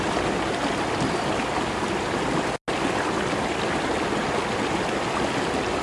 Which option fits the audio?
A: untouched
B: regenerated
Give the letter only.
A